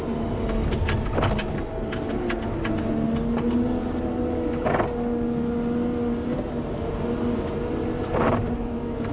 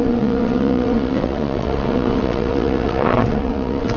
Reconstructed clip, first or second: second